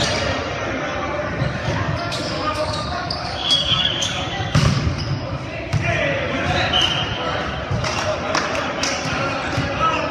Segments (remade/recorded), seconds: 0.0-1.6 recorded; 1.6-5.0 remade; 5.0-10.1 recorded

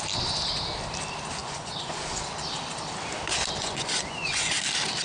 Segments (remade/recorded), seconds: 0.0-1.4 recorded; 1.4-2.2 remade; 2.2-3.6 recorded; 3.6-4.5 remade; 4.5-5.0 recorded